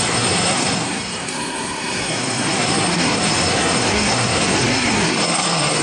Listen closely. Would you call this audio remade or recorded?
remade